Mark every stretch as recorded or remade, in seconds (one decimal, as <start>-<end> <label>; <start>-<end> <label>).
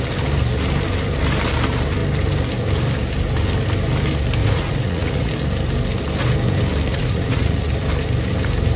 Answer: 0.0-4.4 recorded; 4.4-5.3 remade; 5.3-6.9 recorded; 6.9-7.7 remade; 7.7-8.8 recorded